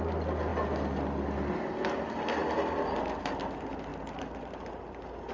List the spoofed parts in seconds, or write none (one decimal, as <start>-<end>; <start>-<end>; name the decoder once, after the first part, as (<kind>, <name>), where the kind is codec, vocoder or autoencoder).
none